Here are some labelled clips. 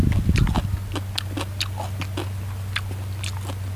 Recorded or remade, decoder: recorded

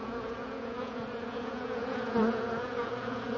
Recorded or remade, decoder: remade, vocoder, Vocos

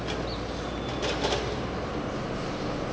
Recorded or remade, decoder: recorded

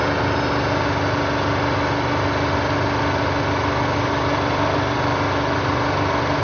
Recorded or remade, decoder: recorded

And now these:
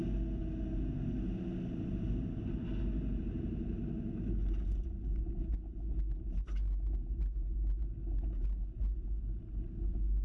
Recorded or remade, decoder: recorded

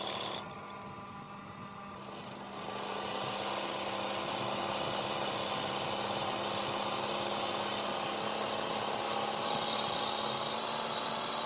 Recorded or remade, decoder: recorded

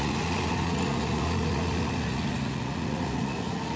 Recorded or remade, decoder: remade, vocoder, Vocos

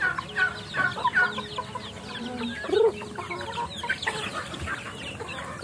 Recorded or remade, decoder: recorded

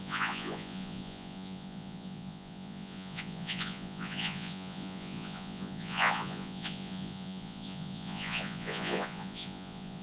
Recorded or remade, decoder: remade, vocoder, Vocos